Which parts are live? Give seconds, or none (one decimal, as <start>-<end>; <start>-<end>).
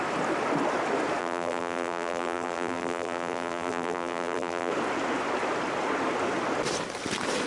0.0-1.2; 4.7-7.5